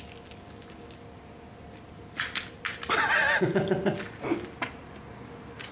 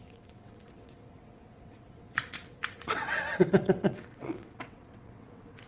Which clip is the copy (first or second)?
second